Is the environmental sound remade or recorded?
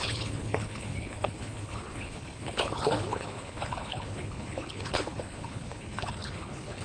remade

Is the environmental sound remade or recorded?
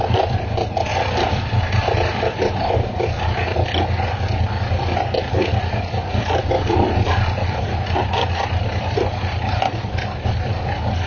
remade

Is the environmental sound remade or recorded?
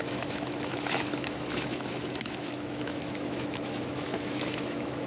remade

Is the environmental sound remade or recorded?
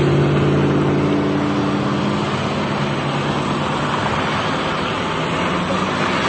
recorded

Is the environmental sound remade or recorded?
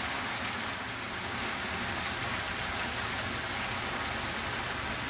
recorded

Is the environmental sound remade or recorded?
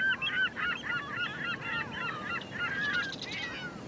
recorded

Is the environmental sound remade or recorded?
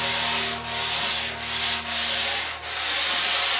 recorded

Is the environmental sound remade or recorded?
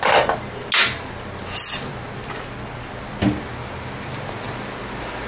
recorded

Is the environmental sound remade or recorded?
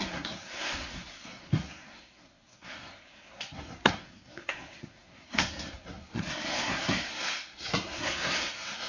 remade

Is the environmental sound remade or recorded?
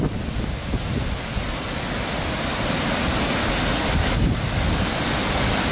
recorded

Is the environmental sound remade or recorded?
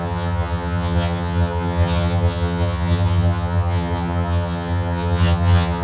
remade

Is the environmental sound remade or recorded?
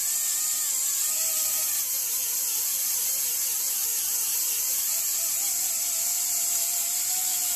recorded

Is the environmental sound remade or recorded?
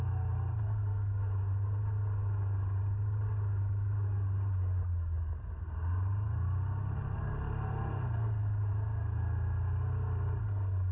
recorded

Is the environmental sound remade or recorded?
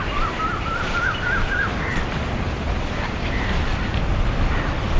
remade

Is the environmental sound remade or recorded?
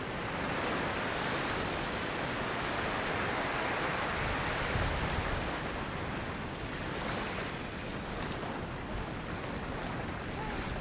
recorded